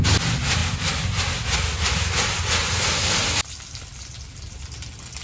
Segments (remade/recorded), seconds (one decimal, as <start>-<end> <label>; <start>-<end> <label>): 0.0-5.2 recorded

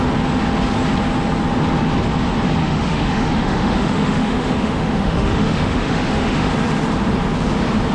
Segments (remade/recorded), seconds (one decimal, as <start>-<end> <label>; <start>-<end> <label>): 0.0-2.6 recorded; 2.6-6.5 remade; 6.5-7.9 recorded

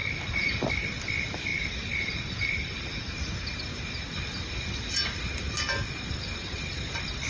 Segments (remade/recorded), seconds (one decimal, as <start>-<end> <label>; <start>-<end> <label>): 0.0-0.7 remade; 0.7-1.5 recorded; 1.5-3.1 remade; 3.1-7.3 recorded

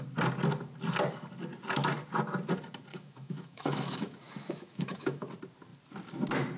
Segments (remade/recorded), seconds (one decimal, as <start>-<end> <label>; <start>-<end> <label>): 0.0-2.9 recorded; 2.9-5.3 remade; 5.3-6.6 recorded

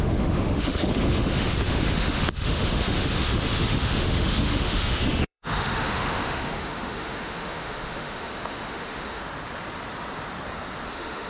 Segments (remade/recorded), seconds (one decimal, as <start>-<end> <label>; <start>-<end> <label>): 0.0-9.2 remade; 9.2-10.9 recorded; 10.9-11.3 remade

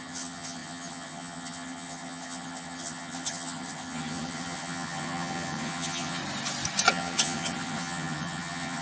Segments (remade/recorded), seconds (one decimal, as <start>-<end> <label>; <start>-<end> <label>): 0.0-6.2 remade; 6.2-6.9 recorded; 6.9-8.8 remade

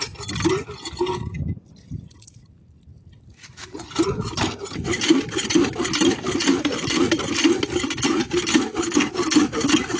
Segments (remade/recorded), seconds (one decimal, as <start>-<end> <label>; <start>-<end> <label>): 0.0-10.0 recorded